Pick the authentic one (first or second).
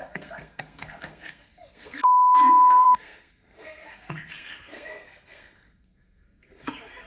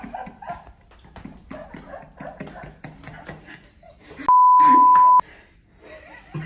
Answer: second